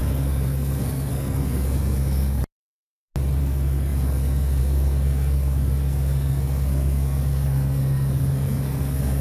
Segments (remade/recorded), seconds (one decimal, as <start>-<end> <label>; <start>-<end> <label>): 0.0-2.4 remade; 2.4-3.4 recorded; 3.4-9.2 remade